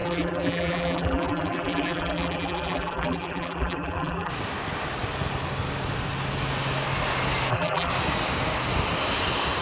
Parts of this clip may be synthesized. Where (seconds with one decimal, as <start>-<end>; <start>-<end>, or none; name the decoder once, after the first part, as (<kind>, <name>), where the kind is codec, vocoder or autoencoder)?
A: 0.0-4.3 (vocoder, BigVGAN v2); 7.5-7.9